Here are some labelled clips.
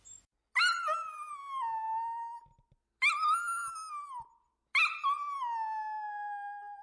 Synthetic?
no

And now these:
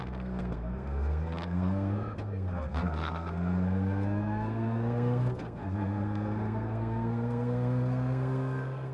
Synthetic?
yes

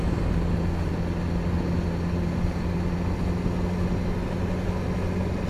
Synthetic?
no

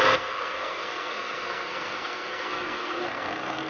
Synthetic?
yes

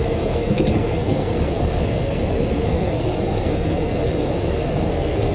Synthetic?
yes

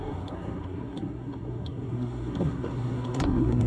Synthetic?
yes